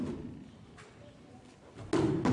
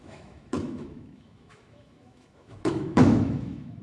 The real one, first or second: first